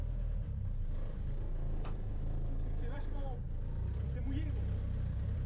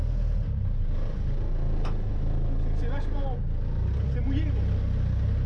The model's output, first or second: first